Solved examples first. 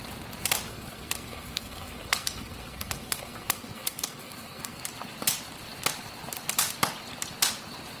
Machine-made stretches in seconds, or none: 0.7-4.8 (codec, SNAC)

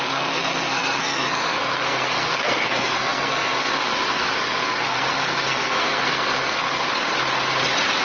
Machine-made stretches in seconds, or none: 0.0-6.8 (codec, SNAC)

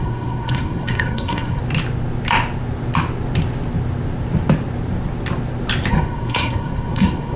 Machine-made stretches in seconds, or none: 0.0-1.6 (codec, SNAC); 5.9-7.4

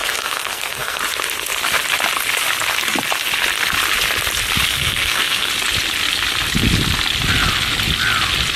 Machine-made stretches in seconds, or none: 0.0-1.0 (codec, SNAC); 4.7-5.5